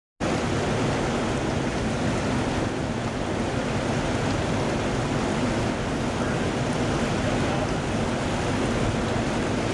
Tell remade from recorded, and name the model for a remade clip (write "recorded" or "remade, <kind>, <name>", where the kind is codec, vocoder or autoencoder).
recorded